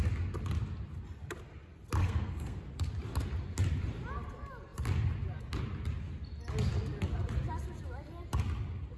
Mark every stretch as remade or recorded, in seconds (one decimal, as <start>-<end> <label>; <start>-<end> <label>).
0.0-2.0 recorded; 2.0-2.6 remade; 2.6-9.0 recorded